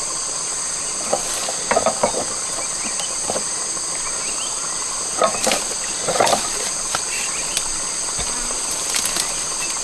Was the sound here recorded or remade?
recorded